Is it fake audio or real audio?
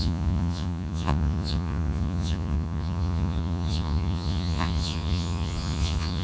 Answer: fake